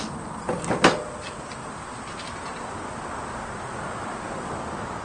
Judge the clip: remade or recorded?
recorded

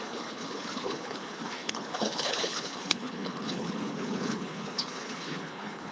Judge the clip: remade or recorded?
remade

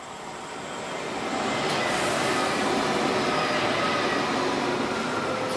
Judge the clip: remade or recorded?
recorded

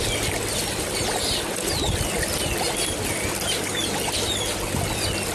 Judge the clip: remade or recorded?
recorded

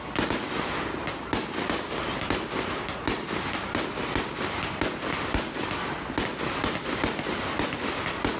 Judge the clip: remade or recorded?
recorded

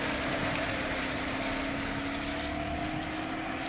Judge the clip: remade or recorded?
recorded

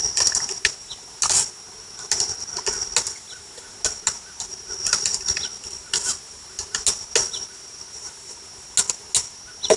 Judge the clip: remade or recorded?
recorded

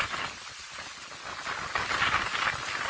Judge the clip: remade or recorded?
recorded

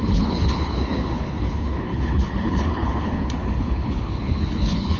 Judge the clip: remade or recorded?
remade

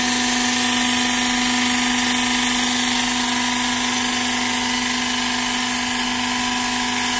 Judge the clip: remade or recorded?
recorded